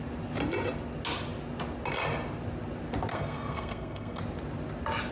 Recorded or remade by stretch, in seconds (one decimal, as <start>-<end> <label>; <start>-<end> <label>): 0.0-3.1 recorded; 3.1-4.2 remade; 4.2-5.1 recorded